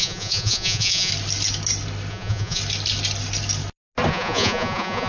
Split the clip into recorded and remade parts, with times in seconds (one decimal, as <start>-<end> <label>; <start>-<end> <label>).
0.0-1.1 remade; 1.1-2.1 recorded; 2.1-2.6 remade; 2.6-4.1 recorded; 4.1-5.1 remade

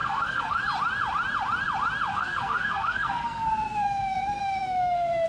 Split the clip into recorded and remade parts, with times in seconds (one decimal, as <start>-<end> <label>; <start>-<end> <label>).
0.0-0.6 remade; 0.6-2.1 recorded; 2.1-5.3 remade